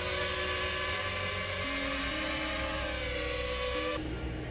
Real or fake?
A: real